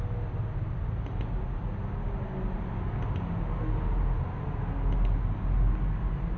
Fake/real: real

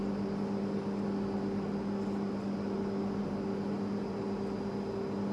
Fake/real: real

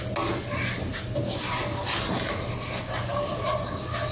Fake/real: real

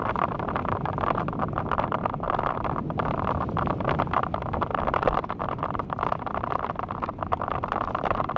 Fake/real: real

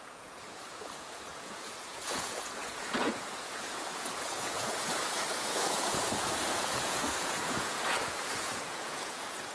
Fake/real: fake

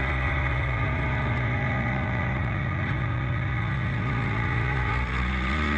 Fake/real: fake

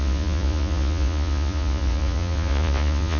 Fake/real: fake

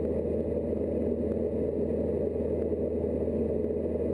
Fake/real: real